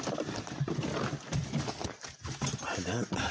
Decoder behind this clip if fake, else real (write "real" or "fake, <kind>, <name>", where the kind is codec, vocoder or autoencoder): real